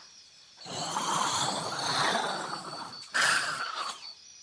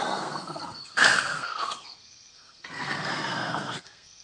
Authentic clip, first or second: first